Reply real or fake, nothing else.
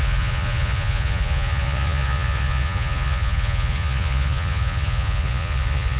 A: fake